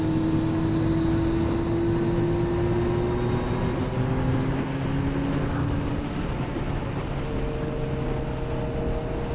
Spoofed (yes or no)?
no